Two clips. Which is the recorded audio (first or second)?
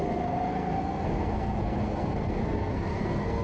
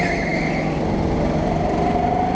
second